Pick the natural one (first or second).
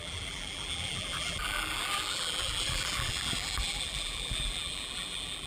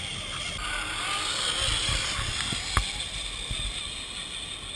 second